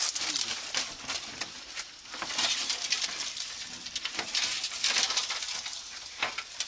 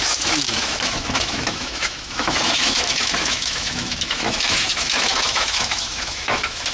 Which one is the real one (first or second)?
first